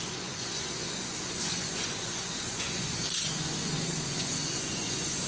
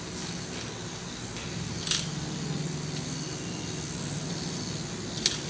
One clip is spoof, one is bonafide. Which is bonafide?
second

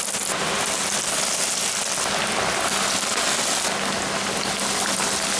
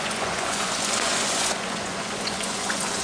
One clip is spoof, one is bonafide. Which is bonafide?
first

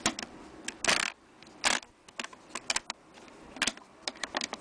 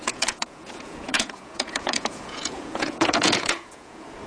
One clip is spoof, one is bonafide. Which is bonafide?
first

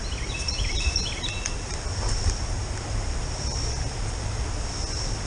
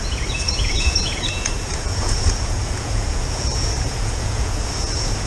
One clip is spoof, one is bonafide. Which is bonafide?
first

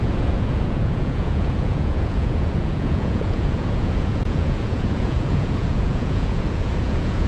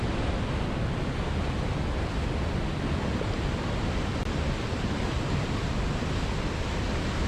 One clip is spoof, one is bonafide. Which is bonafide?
second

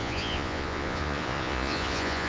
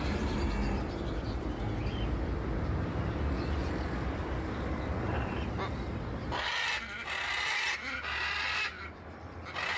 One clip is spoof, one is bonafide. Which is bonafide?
second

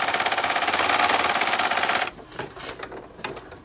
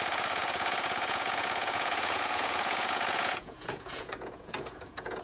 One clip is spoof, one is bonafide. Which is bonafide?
first